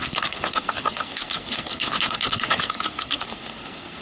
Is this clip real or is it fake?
fake